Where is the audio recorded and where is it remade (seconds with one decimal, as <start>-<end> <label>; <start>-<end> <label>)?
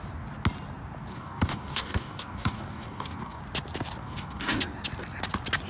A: 0.0-1.1 recorded; 1.1-3.4 remade; 3.4-4.0 recorded; 4.0-4.6 remade; 4.6-5.7 recorded